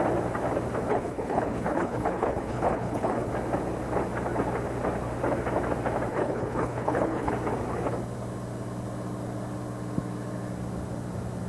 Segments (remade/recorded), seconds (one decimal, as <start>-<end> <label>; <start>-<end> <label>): 0.0-0.9 recorded; 0.9-3.3 remade; 3.3-6.1 recorded; 6.1-7.3 remade; 7.3-11.5 recorded